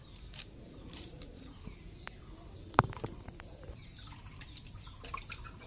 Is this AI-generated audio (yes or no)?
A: yes